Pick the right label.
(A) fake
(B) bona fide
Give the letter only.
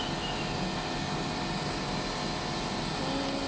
B